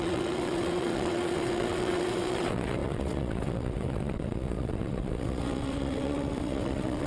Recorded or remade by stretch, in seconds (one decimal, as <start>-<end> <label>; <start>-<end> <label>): 0.0-7.1 remade

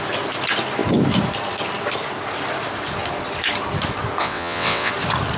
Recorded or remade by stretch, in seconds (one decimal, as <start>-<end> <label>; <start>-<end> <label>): 0.0-4.2 recorded; 4.2-4.9 remade; 4.9-5.4 recorded

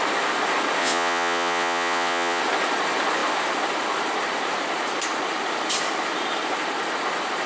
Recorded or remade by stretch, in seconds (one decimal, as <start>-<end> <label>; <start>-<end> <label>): 0.0-0.8 recorded; 0.8-2.4 remade; 2.4-7.5 recorded

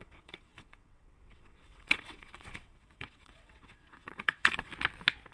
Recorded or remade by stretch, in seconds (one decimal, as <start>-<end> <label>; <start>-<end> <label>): 0.0-4.7 remade; 4.7-5.3 recorded

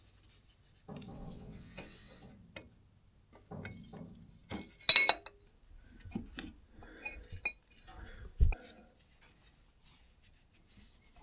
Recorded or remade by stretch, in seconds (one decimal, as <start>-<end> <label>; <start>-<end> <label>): 0.0-1.1 recorded; 1.1-2.3 remade; 2.3-11.2 recorded

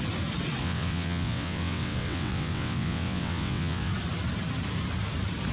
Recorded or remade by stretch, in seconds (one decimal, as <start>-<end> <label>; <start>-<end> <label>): 0.0-0.6 recorded; 0.6-3.9 remade; 3.9-5.5 recorded